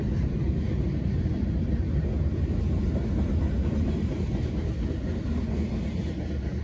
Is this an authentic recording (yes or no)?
yes